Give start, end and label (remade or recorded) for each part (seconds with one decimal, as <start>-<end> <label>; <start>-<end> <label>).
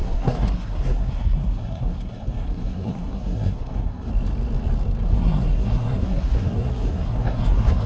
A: 0.0-4.1 remade; 4.1-5.1 recorded; 5.1-7.9 remade